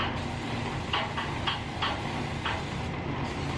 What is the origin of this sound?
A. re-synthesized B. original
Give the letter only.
B